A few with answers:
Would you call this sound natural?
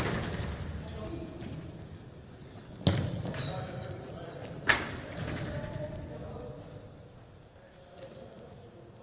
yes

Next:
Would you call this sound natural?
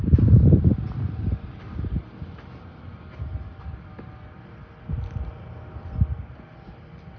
yes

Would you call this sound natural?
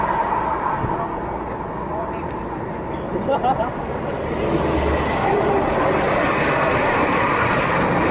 yes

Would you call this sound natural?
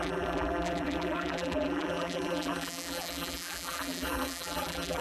no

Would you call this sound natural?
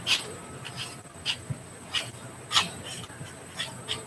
no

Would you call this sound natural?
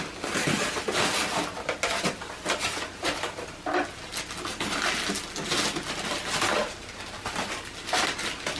yes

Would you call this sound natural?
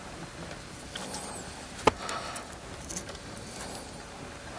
yes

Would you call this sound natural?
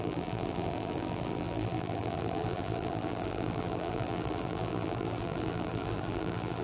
no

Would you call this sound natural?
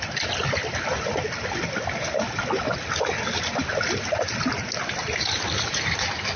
yes